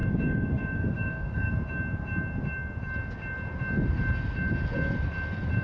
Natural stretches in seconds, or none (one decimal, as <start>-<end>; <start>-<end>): 1.5-5.6